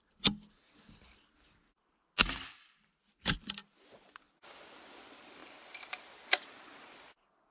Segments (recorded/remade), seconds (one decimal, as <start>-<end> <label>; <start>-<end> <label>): 0.0-5.4 recorded; 5.4-6.0 remade; 6.0-7.5 recorded